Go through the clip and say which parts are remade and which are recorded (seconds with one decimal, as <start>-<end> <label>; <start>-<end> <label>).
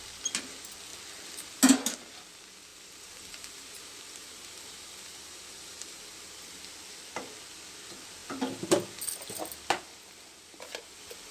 0.0-2.7 recorded; 2.7-6.6 remade; 6.6-11.3 recorded